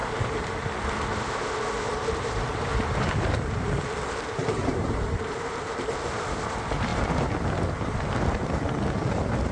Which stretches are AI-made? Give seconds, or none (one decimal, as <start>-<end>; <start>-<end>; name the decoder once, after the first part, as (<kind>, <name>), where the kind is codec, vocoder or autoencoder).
0.0-0.6 (vocoder, BigVGAN v2); 1.9-6.3